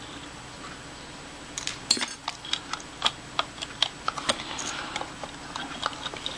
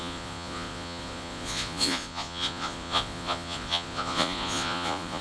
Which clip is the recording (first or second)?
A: first